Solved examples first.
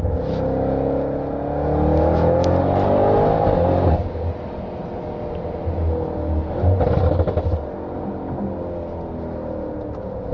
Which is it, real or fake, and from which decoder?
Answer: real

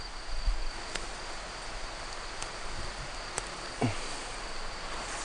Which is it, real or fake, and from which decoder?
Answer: real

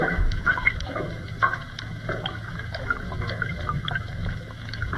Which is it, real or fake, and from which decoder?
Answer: fake, autoencoder, DAC-VAE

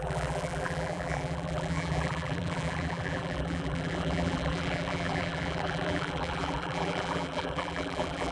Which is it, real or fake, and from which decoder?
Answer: fake, vocoder, BigVGAN v2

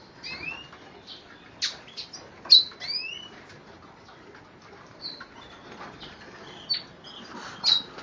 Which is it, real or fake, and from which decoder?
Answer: real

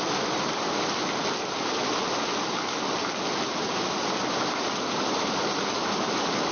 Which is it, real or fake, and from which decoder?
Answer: real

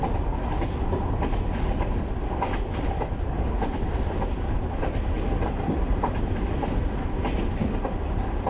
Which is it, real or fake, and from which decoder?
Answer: real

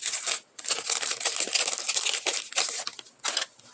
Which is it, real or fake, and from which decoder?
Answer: real